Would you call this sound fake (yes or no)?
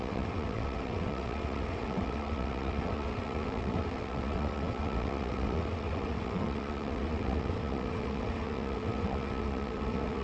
yes